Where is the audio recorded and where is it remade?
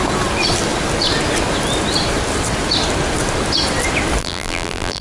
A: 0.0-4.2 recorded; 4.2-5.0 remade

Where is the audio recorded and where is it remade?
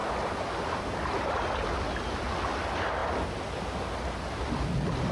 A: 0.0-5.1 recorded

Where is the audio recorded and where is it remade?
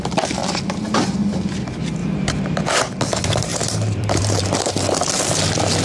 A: 0.0-2.0 recorded; 2.0-2.7 remade; 2.7-3.5 recorded; 3.5-4.7 remade; 4.7-5.8 recorded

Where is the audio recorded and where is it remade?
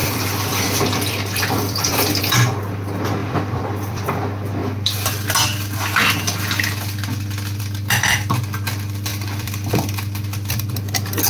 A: 0.0-2.2 remade; 2.2-3.2 recorded; 3.2-4.1 remade; 4.1-9.1 recorded; 9.1-10.5 remade; 10.5-11.3 recorded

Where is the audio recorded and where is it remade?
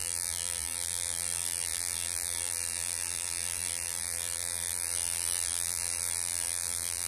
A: 0.0-7.1 remade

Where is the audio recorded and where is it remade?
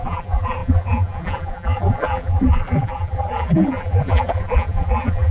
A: 0.0-5.3 remade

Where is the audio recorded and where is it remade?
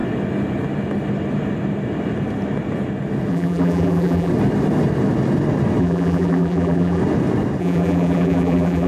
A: 0.0-3.3 recorded; 3.3-4.3 remade; 4.3-5.8 recorded; 5.8-7.0 remade; 7.0-7.6 recorded; 7.6-8.9 remade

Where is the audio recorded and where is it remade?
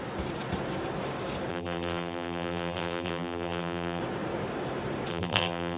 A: 0.0-1.5 recorded; 1.5-4.0 remade; 4.0-5.1 recorded; 5.1-5.8 remade